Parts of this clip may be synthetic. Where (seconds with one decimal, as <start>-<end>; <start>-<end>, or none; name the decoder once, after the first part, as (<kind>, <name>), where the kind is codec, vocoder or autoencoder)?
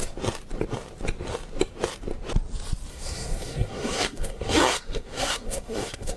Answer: 2.9-6.2 (codec, SNAC)